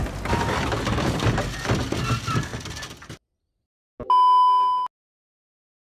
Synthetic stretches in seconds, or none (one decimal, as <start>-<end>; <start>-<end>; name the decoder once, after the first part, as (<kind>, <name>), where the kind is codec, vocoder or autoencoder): none